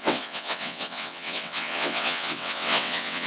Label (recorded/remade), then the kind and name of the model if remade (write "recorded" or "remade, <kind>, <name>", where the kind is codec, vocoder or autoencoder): remade, vocoder, WaveNeXt